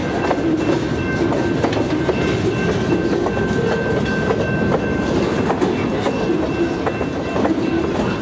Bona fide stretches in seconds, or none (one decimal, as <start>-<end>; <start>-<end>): 0.0-8.2

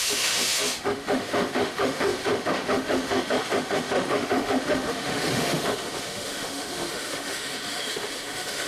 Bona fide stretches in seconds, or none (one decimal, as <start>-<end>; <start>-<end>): none

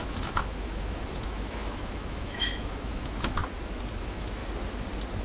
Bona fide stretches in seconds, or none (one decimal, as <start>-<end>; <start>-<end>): 3.4-4.0; 4.4-5.2

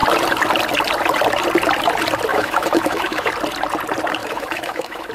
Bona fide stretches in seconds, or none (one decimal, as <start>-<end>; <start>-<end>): 0.0-2.3; 3.3-4.2